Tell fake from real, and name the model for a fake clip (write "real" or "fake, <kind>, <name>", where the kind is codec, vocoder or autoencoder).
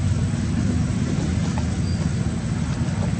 real